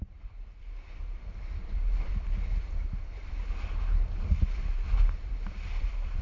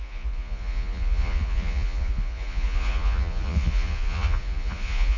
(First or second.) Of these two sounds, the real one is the first